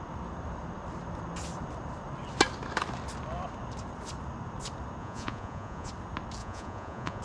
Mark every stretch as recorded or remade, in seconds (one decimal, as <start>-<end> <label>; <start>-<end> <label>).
0.0-5.0 recorded; 5.0-5.9 remade; 5.9-6.4 recorded; 6.4-7.2 remade